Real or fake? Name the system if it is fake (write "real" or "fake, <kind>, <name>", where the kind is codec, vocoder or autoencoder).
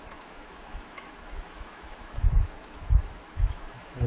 fake, autoencoder, DAC-VAE